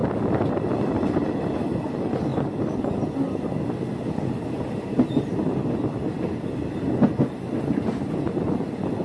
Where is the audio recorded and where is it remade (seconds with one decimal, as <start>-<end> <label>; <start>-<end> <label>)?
0.0-9.0 recorded